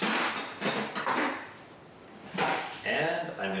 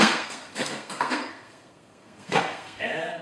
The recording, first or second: first